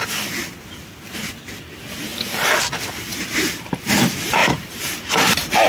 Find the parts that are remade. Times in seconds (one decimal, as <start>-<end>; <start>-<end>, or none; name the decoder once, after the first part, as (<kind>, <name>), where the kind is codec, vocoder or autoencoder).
3.1-3.9 (vocoder, BigVGAN v2); 4.4-5.1